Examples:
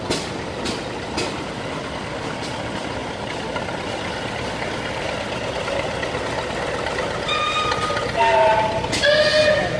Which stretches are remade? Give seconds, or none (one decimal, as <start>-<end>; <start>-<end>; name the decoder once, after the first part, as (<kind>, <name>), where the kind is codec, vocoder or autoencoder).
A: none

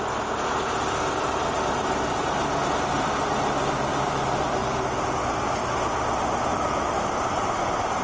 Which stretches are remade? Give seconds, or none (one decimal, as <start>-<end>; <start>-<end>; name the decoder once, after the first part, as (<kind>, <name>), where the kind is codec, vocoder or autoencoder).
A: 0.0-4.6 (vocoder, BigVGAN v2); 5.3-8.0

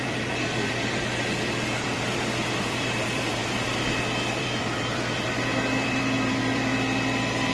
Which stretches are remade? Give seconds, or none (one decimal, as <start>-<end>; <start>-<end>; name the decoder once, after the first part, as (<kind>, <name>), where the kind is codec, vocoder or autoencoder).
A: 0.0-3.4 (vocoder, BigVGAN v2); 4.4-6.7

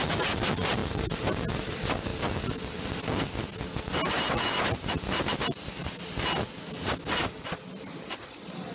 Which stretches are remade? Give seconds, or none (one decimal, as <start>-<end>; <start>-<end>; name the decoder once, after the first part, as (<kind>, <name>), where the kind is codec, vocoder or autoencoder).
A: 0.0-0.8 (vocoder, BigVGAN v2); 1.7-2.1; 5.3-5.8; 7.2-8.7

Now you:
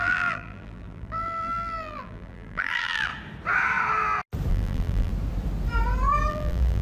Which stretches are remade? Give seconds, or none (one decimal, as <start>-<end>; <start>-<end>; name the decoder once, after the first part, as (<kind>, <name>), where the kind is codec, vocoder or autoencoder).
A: 0.0-3.1 (vocoder, BigVGAN v2); 4.5-5.1; 6.3-6.8

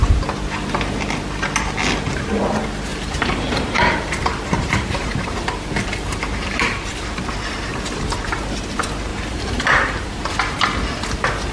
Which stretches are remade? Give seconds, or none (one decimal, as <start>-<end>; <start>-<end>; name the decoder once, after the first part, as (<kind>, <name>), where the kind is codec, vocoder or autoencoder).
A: 2.9-7.2 (vocoder, BigVGAN v2); 9.1-10.3

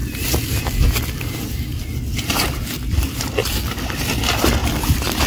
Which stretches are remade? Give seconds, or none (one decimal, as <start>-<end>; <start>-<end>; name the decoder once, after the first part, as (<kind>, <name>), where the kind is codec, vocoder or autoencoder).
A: 0.0-0.6 (vocoder, BigVGAN v2); 1.7-2.7; 3.4-4.1; 4.6-5.3

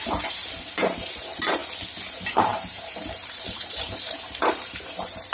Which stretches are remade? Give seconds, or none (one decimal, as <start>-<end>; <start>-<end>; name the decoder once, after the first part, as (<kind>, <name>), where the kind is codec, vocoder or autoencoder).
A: 0.0-1.6 (vocoder, BigVGAN v2); 2.1-5.3